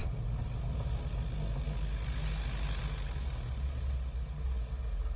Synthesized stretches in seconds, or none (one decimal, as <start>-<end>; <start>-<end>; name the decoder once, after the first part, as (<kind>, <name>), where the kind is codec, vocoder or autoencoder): none